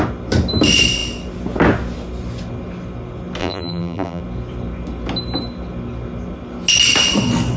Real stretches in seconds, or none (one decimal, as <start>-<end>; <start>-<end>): 0.0-3.4; 4.2-7.6